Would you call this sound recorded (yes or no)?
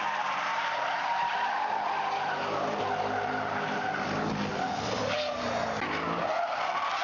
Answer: yes